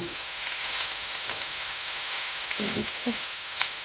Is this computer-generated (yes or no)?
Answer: yes